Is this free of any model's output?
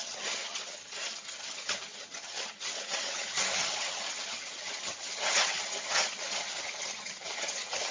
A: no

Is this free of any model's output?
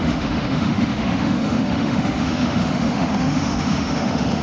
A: no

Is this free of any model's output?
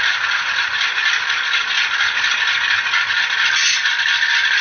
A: yes